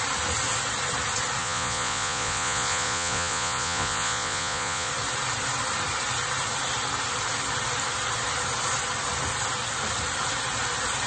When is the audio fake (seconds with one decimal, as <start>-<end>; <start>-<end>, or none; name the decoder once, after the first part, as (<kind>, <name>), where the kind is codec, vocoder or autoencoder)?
1.4-4.9 (vocoder, Vocos)